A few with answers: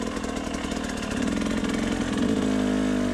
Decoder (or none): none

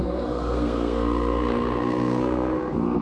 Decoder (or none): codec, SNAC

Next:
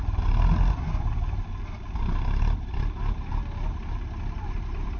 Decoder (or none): vocoder, BigVGAN v2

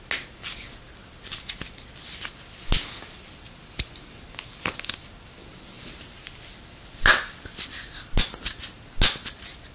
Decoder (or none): none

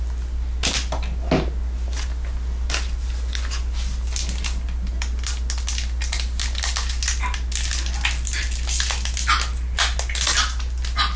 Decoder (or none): none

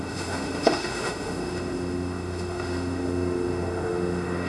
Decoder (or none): autoencoder, DAC-VAE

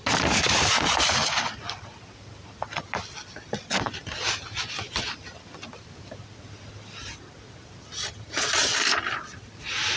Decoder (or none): none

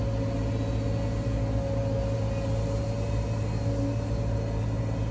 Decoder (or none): none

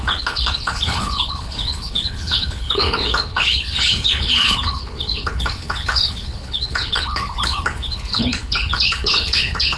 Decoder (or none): codec, HILCodec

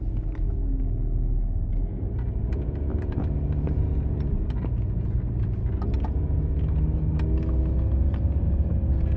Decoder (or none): none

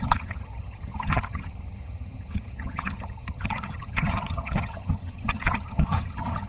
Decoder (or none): vocoder, HiFi-GAN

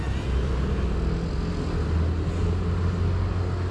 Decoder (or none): none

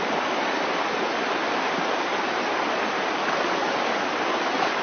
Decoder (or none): none